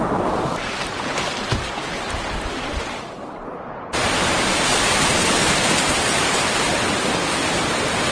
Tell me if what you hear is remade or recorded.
remade